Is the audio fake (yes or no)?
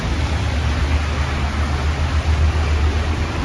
no